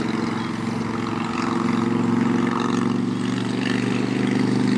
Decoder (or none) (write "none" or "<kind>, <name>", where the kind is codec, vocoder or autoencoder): none